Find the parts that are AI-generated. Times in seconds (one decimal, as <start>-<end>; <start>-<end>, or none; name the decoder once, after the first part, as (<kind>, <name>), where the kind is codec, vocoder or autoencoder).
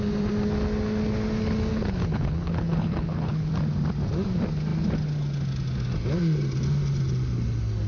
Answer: 1.7-3.5 (codec, HILCodec)